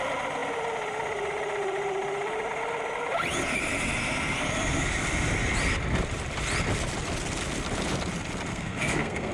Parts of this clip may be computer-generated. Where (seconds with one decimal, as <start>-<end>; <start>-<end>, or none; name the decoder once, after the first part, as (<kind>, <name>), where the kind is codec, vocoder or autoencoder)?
8.5-9.3 (codec, SNAC)